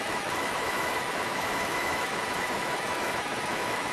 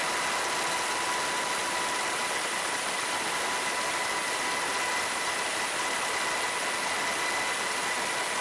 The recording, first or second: second